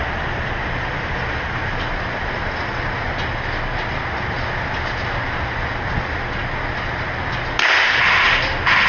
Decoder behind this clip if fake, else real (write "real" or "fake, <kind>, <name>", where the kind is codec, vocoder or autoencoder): real